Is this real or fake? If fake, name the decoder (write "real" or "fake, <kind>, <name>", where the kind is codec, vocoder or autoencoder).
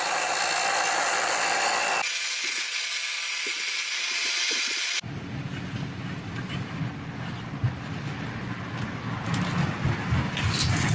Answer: real